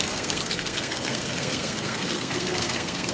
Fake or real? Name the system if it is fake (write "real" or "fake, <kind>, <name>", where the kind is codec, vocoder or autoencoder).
fake, codec, SNAC